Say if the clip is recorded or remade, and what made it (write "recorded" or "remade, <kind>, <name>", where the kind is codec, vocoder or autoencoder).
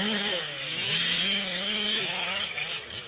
remade, autoencoder, DAC-VAE